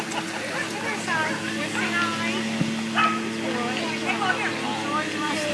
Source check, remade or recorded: recorded